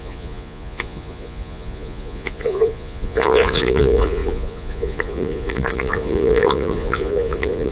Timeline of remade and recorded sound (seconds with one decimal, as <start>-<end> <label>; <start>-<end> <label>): 0.0-7.7 remade